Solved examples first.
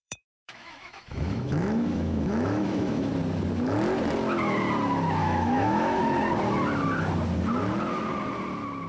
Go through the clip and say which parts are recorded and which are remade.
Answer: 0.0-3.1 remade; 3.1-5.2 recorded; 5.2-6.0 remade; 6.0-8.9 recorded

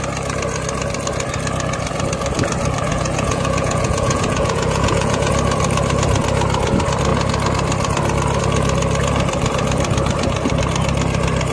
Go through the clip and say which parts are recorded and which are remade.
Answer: 0.0-2.9 recorded; 2.9-5.3 remade; 5.3-11.5 recorded